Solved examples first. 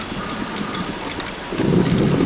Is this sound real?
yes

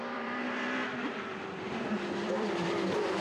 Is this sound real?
no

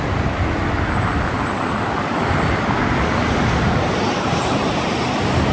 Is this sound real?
yes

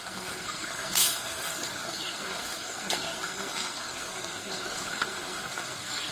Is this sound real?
no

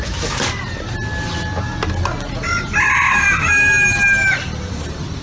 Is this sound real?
yes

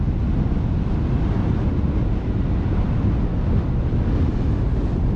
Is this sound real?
yes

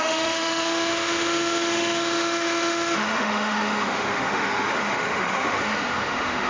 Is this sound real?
no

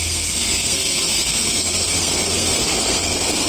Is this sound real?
no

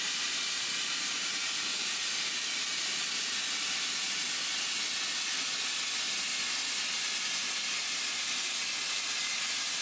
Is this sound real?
yes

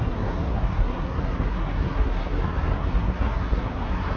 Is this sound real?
no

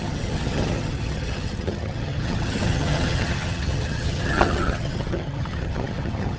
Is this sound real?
no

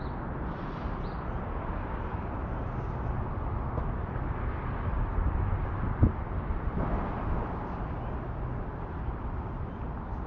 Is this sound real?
yes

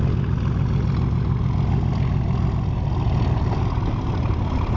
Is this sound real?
yes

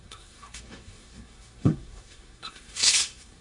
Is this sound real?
no